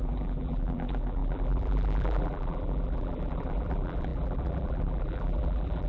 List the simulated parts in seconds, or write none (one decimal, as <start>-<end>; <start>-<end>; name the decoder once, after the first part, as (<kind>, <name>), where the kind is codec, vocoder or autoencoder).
0.0-5.9 (vocoder, BigVGAN v2)